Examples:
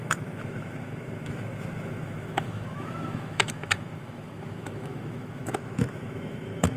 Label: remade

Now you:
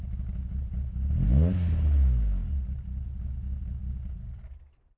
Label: recorded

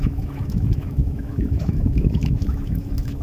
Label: remade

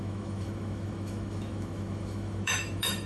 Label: remade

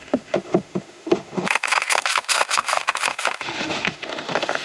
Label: remade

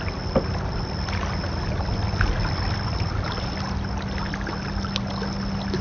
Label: recorded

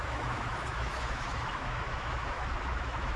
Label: remade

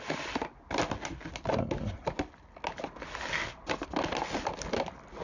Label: recorded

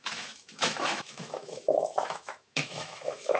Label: remade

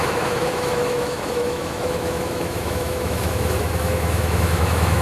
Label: remade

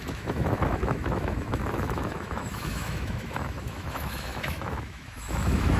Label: remade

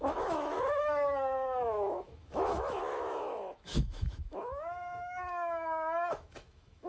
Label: remade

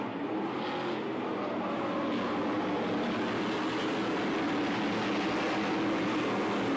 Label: recorded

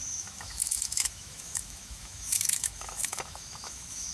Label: remade